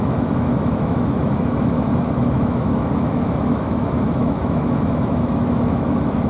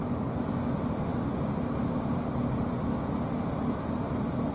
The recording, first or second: second